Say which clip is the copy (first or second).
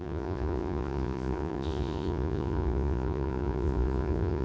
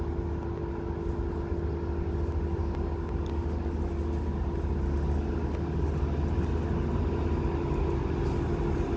first